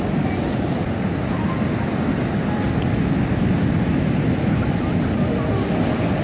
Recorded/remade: recorded